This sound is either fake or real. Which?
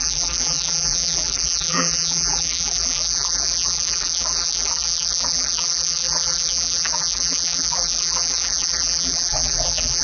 fake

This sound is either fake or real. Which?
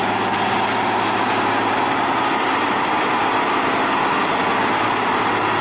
real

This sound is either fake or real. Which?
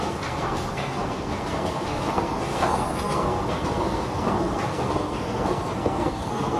fake